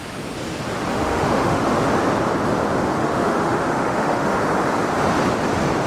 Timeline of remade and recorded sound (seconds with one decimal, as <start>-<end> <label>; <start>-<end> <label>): 0.0-0.9 recorded; 0.9-1.7 remade; 1.7-3.0 recorded; 3.0-4.4 remade; 4.4-5.9 recorded